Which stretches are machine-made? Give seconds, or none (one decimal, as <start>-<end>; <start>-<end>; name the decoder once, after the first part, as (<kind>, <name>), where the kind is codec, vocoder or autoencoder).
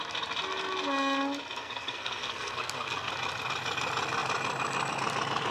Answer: 1.6-3.1 (codec, SNAC)